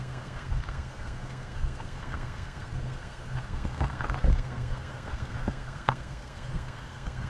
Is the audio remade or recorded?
remade